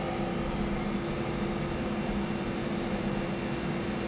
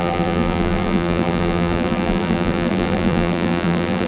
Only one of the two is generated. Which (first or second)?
second